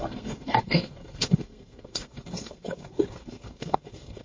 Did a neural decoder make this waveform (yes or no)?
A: yes